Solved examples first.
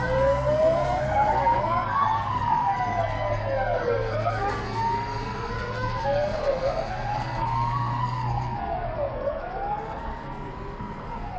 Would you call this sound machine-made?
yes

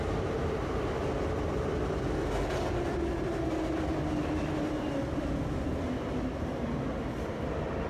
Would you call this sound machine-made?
no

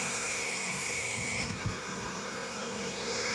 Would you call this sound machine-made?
yes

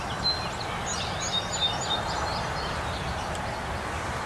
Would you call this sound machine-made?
no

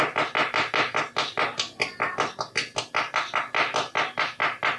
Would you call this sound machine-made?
no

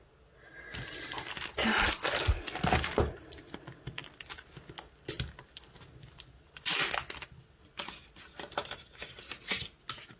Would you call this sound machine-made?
no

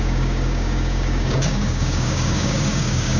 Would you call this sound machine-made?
yes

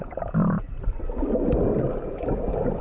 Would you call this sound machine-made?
no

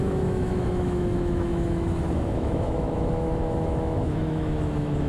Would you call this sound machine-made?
yes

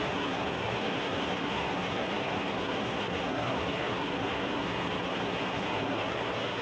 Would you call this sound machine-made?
yes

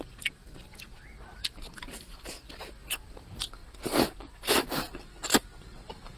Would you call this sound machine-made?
no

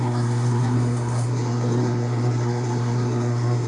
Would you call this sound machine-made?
yes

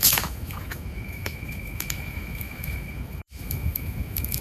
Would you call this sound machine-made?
yes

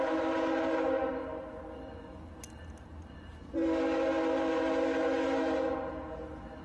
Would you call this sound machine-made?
no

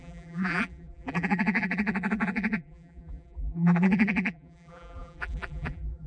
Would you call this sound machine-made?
yes